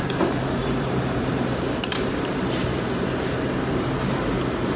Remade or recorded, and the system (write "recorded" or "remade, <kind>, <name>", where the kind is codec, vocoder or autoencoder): remade, vocoder, BigVGAN v2